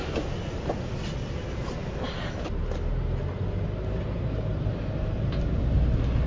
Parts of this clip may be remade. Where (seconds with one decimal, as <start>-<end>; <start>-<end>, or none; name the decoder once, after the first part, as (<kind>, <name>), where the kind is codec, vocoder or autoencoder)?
none